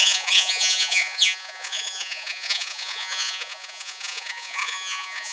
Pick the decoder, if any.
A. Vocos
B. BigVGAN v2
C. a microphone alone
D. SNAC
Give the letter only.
A